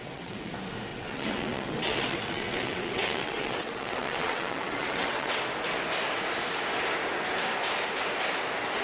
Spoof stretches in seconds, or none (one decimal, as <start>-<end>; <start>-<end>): 0.0-0.5; 0.9-5.4